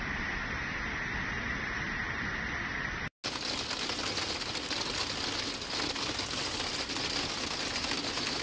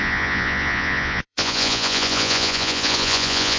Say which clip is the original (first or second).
first